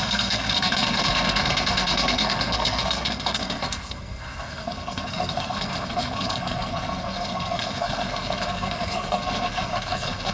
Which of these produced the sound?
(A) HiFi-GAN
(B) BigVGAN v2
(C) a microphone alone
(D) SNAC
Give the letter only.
D